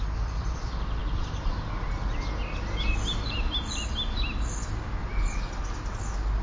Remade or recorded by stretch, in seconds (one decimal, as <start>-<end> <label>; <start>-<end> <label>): 0.0-6.4 recorded